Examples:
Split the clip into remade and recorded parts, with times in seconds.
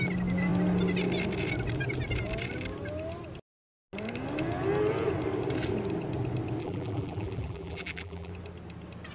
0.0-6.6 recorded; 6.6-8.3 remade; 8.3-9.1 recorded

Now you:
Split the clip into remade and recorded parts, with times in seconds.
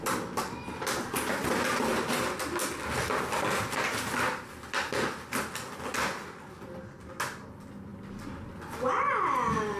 0.0-7.9 recorded; 7.9-8.5 remade; 8.5-9.8 recorded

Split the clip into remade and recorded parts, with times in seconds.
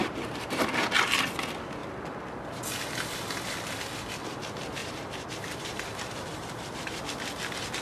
0.0-0.8 remade; 0.8-4.8 recorded; 4.8-7.0 remade; 7.0-7.8 recorded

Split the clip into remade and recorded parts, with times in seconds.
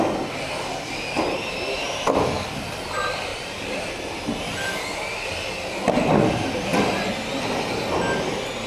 0.0-3.3 recorded; 3.3-4.8 remade; 4.8-8.7 recorded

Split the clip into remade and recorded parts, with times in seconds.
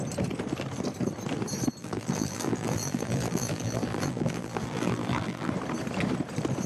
0.0-1.8 recorded; 1.8-5.5 remade; 5.5-6.7 recorded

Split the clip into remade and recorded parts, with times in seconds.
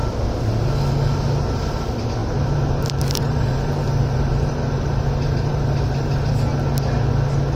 0.0-2.2 recorded; 2.2-6.3 remade; 6.3-7.6 recorded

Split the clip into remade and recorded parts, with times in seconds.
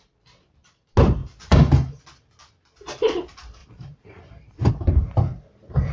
0.0-1.2 recorded; 1.2-2.0 remade; 2.0-3.6 recorded; 3.6-4.7 remade; 4.7-5.9 recorded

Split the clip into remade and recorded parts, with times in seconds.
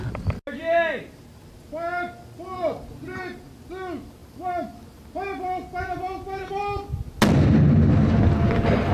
0.0-8.9 recorded